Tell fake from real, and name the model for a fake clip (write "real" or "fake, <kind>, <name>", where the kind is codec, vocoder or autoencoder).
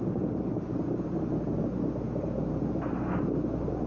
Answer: real